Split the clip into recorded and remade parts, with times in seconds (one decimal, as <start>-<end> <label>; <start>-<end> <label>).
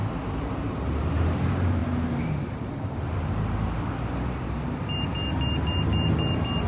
0.0-6.7 recorded